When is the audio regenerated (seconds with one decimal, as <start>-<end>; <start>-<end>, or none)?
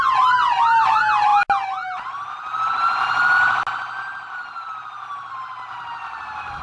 0.0-1.3; 5.3-6.6